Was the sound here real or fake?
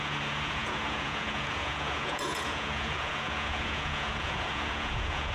fake